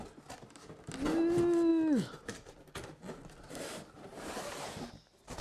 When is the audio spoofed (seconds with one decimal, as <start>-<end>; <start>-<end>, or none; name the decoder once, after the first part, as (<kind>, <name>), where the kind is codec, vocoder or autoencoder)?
none